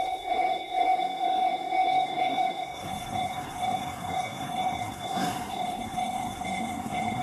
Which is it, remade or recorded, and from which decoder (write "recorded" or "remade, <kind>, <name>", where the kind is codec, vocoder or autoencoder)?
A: remade, codec, SNAC